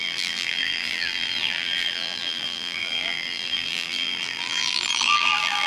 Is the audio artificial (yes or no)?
yes